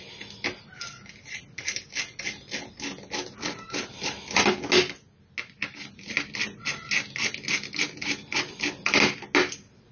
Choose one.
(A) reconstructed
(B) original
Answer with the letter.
B